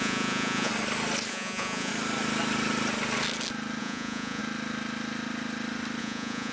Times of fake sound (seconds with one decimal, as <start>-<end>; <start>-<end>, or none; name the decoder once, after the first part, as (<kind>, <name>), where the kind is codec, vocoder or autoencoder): 0.0-0.7 (vocoder, Vocos); 1.3-1.9; 3.8-4.4; 6.0-6.5